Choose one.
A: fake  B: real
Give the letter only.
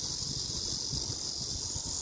B